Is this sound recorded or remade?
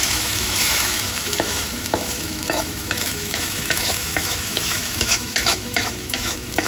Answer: remade